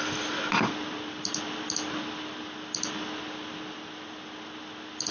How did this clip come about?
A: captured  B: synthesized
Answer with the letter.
A